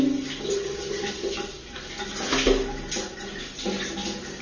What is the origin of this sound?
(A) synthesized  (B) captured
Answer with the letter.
B